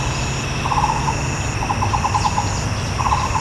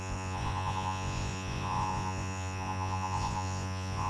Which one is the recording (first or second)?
first